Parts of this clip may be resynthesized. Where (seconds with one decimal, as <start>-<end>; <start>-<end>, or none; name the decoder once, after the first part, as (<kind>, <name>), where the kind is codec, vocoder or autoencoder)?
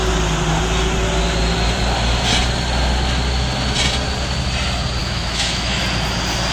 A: 5.0-5.8 (autoencoder, DAC-VAE)